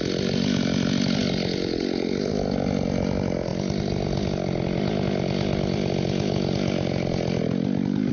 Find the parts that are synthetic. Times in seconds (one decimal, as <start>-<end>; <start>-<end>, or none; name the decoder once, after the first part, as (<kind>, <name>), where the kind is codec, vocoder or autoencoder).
none